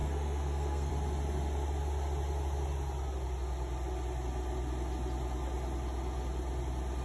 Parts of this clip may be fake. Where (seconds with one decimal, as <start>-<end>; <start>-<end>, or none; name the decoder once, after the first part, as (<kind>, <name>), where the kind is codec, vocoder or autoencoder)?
0.0-0.9 (codec, SNAC)

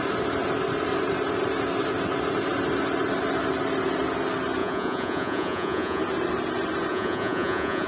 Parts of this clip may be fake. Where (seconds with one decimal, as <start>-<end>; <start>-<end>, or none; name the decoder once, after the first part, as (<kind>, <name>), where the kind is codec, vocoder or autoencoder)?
4.6-6.0 (vocoder, Vocos); 6.9-7.9

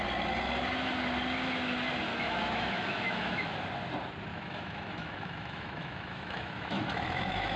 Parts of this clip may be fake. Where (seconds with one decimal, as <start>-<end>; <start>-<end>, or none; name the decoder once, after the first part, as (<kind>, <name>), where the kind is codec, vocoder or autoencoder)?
2.1-3.5 (autoencoder, DAC-VAE); 4.3-7.6

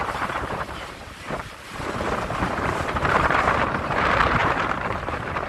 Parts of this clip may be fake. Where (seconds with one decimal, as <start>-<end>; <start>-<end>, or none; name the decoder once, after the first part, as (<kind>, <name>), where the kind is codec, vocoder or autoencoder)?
0.0-5.5 (vocoder, BigVGAN v2)

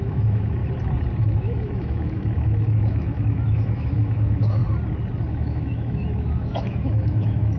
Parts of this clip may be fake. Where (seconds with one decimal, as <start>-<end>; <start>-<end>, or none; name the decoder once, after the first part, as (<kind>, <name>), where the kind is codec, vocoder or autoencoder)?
0.0-0.6 (autoencoder, DAC-VAE); 1.2-4.6; 5.3-7.6

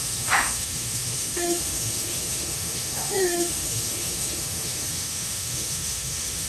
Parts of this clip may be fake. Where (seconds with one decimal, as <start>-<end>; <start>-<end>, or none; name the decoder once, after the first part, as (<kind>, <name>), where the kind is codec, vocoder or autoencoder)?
0.0-6.5 (autoencoder, DAC-VAE)

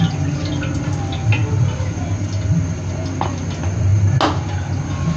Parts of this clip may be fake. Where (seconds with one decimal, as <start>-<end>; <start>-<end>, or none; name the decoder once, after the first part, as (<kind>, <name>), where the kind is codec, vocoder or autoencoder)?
none